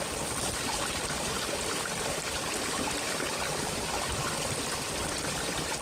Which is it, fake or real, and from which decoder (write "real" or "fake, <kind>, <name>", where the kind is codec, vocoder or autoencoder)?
real